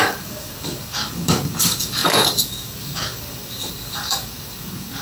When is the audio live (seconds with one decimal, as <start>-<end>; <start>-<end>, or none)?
none